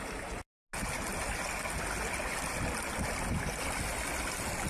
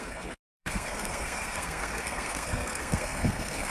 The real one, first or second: first